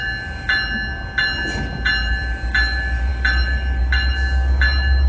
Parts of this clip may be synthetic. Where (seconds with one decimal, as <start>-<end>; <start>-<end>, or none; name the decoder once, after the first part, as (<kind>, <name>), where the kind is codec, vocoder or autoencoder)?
none

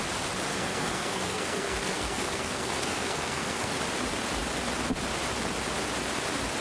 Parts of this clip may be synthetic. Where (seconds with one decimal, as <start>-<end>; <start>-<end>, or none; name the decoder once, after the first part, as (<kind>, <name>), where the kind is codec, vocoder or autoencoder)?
0.5-3.8 (codec, SNAC)

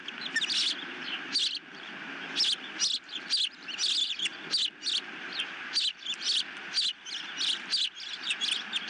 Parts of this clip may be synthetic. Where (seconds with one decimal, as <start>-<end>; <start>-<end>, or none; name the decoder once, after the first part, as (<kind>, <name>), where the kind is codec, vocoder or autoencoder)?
none

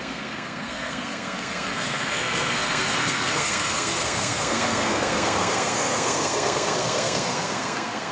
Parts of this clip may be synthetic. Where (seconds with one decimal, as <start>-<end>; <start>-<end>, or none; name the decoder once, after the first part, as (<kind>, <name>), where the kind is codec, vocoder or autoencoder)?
0.0-8.1 (codec, SNAC)

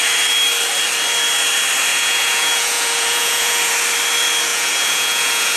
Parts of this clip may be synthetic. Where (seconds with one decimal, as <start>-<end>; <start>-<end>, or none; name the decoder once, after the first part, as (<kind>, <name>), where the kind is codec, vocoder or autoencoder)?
1.9-3.7 (vocoder, Vocos); 4.5-5.6

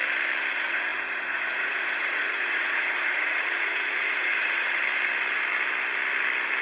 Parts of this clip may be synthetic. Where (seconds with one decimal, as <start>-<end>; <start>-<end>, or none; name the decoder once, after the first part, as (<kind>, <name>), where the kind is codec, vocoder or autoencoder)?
0.5-4.8 (vocoder, Vocos)